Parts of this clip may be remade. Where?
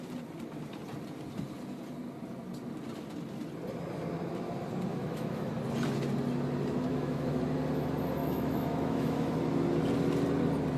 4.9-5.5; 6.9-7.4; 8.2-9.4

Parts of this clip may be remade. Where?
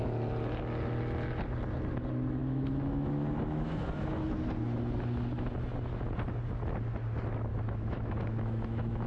2.4-4.5; 7.5-9.1